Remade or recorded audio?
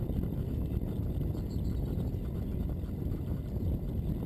remade